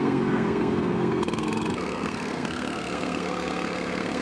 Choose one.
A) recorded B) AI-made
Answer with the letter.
B